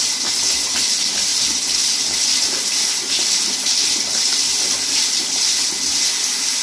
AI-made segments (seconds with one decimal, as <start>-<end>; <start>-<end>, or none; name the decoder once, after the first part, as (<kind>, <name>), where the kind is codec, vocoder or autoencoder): none